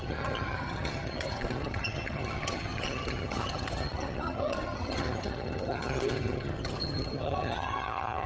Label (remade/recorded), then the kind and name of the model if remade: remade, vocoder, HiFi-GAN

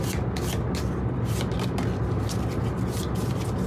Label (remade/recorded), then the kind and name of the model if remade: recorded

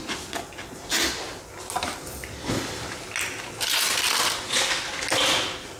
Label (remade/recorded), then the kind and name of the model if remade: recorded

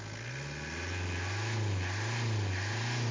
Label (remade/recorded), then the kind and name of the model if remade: recorded